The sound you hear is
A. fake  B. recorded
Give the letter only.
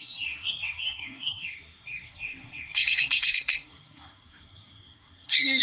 A